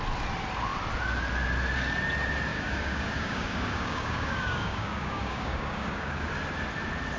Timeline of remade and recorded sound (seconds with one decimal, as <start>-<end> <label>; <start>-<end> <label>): 0.0-2.5 recorded; 2.5-6.3 remade; 6.3-7.2 recorded